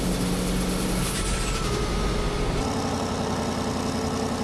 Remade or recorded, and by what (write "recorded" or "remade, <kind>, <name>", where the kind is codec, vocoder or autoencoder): recorded